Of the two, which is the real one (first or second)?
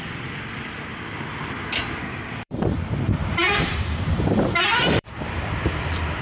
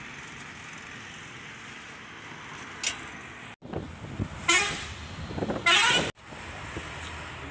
second